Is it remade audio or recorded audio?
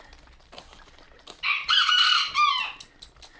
recorded